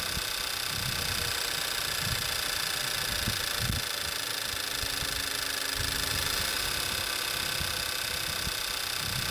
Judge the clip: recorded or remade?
recorded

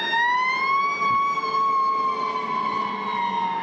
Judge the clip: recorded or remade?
recorded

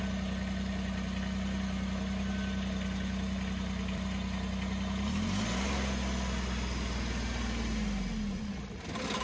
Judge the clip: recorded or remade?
recorded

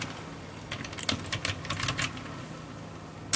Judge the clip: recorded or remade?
recorded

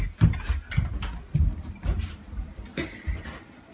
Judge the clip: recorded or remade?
recorded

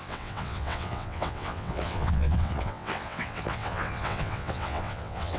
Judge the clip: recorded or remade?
remade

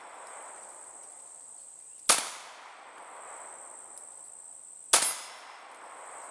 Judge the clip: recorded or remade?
recorded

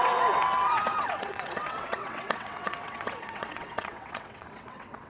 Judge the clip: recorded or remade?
remade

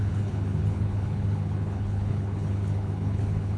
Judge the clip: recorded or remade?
remade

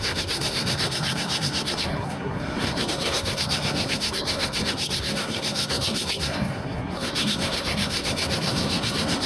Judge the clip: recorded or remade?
remade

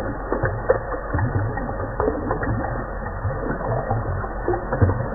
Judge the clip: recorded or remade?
remade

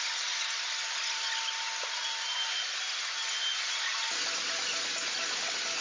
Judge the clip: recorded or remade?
recorded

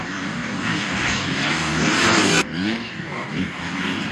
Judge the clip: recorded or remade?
remade